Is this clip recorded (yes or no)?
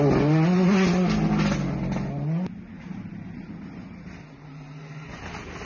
yes